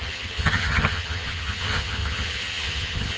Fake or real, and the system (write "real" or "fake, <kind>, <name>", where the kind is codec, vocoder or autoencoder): fake, vocoder, HiFi-GAN